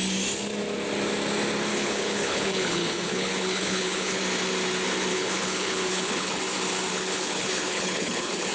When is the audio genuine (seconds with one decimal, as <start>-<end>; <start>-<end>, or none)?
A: 0.0-1.7; 4.2-5.1; 6.4-6.9